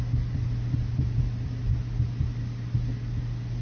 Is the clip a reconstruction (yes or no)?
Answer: no